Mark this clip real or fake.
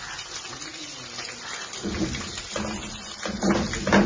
real